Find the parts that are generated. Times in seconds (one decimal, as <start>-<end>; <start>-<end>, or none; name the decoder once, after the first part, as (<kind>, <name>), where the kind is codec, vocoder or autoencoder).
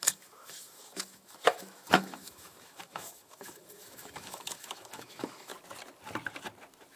0.0-5.5 (autoencoder, DAC-VAE)